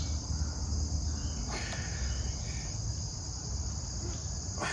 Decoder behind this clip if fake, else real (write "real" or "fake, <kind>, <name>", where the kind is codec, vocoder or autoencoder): real